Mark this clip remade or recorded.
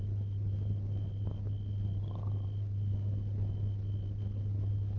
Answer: recorded